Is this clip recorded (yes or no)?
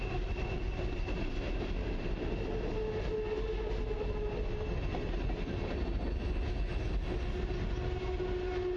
yes